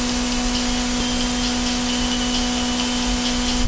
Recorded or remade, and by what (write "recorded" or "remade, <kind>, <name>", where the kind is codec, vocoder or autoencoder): recorded